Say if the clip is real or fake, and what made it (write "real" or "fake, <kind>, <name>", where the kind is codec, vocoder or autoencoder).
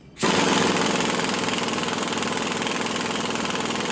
real